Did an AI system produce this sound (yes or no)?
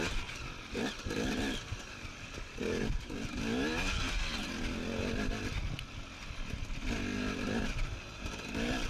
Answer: no